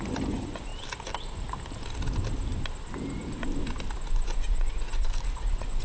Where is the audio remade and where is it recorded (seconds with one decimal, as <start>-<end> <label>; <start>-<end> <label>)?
0.0-0.7 remade; 0.7-4.1 recorded; 4.1-5.8 remade